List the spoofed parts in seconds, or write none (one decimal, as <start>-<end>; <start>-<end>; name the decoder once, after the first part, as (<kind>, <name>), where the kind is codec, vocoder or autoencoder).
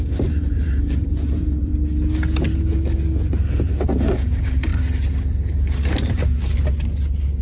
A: 0.0-1.7 (vocoder, BigVGAN v2); 4.0-4.7